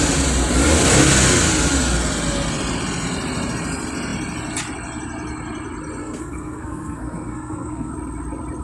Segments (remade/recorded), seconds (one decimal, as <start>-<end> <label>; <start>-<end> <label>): 0.0-6.0 recorded; 6.0-7.9 remade; 7.9-8.6 recorded